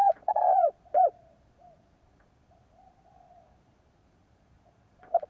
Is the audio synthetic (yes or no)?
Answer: yes